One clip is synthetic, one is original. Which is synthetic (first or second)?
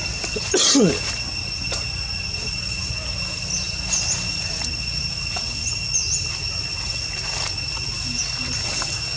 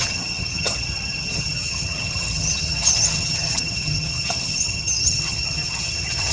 second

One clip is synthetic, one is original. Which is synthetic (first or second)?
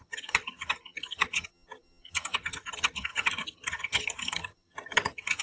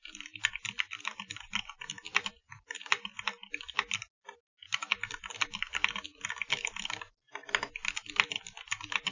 first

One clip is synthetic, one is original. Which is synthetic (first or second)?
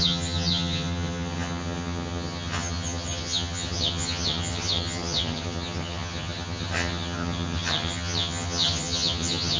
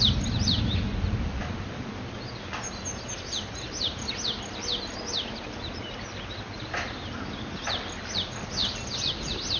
first